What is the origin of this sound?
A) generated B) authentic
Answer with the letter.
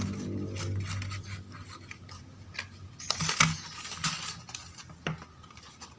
B